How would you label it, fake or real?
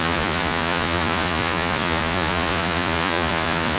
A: fake